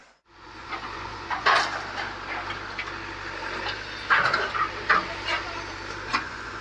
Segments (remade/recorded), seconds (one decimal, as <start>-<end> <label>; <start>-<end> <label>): 0.0-1.6 remade; 1.6-6.1 recorded; 6.1-6.6 remade

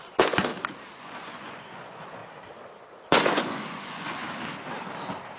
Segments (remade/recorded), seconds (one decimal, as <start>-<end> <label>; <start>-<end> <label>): 0.0-0.5 remade; 0.5-1.0 recorded; 1.0-2.2 remade; 2.2-3.1 recorded; 3.1-4.2 remade; 4.2-5.4 recorded

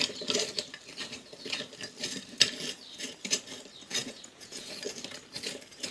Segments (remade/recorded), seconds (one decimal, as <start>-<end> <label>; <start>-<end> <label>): 0.0-4.0 recorded; 4.0-4.7 remade; 4.7-5.9 recorded

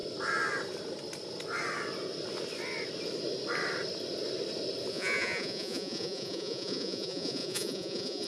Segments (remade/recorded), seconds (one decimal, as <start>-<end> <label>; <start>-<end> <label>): 0.0-4.9 recorded; 4.9-8.3 remade

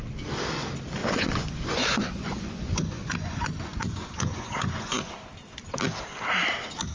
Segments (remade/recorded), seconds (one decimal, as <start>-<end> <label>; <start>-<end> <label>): 0.0-1.0 recorded; 1.0-5.1 remade; 5.1-6.9 recorded

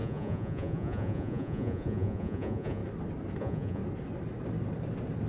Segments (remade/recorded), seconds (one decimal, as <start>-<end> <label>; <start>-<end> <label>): 0.0-2.8 remade; 2.8-3.4 recorded; 3.4-3.8 remade; 3.8-5.3 recorded